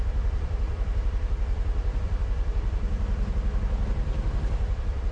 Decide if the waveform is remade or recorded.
remade